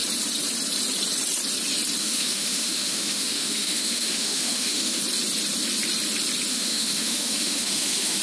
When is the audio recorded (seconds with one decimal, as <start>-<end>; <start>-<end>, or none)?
0.0-2.0; 5.0-6.5